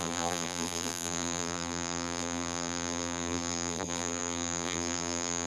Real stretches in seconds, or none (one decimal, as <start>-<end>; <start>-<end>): none